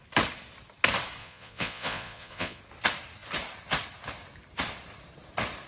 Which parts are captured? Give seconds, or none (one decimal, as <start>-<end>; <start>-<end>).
0.0-1.2; 2.6-5.7